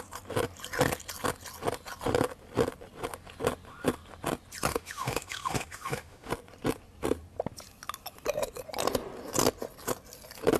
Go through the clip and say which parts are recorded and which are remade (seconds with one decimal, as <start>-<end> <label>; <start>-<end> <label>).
0.0-4.7 recorded; 4.7-6.3 remade; 6.3-10.6 recorded